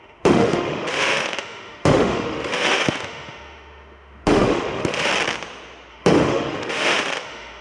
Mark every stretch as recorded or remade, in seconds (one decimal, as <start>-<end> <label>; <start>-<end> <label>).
0.0-5.1 remade; 5.1-5.9 recorded; 5.9-7.6 remade